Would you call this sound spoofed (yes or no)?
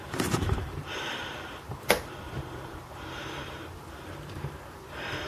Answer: yes